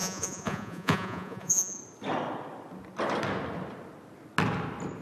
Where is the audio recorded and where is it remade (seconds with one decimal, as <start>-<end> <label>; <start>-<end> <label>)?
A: 0.0-1.8 remade; 1.8-5.0 recorded